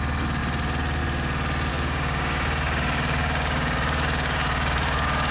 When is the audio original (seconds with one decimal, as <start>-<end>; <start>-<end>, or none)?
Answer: 0.0-1.7

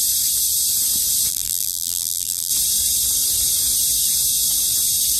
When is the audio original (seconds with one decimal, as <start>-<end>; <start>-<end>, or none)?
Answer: 0.0-1.3; 2.5-5.2

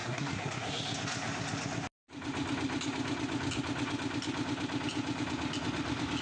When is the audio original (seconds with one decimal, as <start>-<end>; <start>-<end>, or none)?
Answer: 0.7-6.2

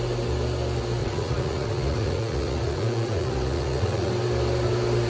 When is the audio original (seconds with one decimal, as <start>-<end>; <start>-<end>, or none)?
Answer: 0.0-1.0; 4.1-5.1

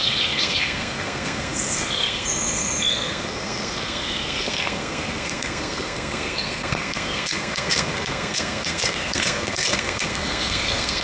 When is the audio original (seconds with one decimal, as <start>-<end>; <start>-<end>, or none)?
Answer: none